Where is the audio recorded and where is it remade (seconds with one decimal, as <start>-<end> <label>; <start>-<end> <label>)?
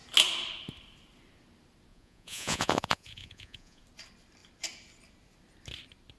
0.0-1.9 recorded; 1.9-3.8 remade; 3.8-6.2 recorded